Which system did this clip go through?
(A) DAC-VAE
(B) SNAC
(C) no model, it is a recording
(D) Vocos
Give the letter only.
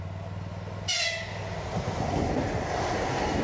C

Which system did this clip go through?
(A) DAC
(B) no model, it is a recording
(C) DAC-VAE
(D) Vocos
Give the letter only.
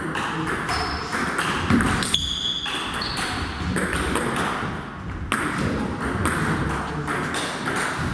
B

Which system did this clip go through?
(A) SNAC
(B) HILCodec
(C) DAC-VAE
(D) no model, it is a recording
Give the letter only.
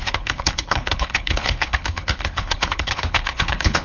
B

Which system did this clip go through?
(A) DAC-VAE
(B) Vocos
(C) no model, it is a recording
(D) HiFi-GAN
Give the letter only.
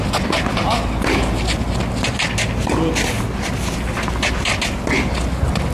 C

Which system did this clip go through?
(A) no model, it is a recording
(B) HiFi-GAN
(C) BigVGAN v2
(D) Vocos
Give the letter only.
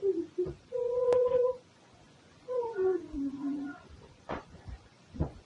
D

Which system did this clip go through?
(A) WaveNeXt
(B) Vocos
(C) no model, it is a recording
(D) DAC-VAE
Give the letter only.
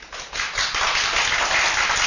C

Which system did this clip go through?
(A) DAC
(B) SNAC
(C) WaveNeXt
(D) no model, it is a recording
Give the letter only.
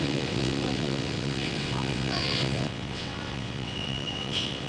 C